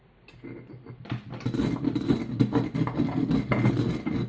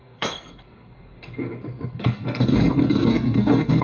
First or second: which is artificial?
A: second